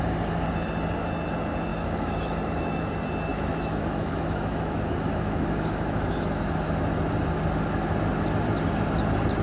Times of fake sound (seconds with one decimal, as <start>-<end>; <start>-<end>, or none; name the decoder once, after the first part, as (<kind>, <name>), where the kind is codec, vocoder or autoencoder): 1.7-2.9 (autoencoder, DAC-VAE); 3.3-6.4